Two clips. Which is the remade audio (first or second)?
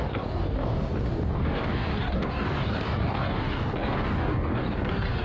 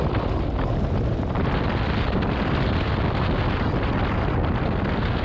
first